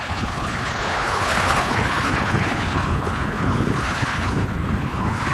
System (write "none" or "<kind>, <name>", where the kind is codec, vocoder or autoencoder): codec, HILCodec